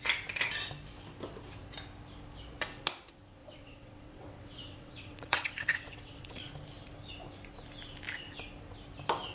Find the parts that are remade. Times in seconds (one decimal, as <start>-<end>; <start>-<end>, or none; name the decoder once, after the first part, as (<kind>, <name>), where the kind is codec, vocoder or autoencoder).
3.4-6.5 (vocoder, WaveNeXt)